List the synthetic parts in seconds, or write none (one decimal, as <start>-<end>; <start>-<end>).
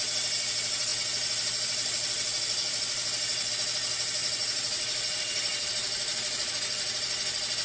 4.2-6.5